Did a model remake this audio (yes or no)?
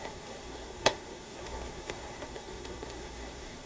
yes